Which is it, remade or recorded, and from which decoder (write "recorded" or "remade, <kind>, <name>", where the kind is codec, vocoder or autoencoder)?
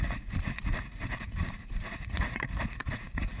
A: remade, vocoder, Vocos